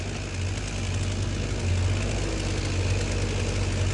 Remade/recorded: recorded